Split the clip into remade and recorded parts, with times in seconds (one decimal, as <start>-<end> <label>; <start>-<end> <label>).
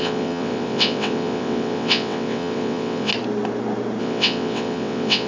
0.0-3.1 remade; 3.1-4.0 recorded; 4.0-5.3 remade